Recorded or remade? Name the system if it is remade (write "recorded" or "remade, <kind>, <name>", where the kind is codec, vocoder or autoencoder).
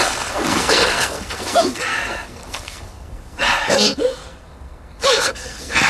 remade, codec, SNAC